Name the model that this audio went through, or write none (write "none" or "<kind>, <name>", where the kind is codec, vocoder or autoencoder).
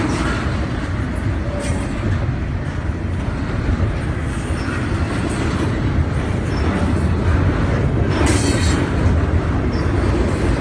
none